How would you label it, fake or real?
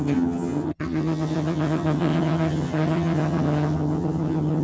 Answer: fake